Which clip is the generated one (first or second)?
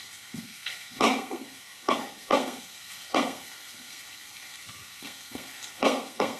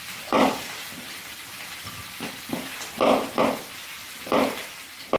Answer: first